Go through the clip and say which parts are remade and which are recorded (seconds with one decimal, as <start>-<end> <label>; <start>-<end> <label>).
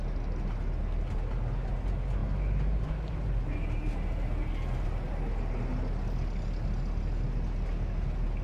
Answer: 0.0-8.4 recorded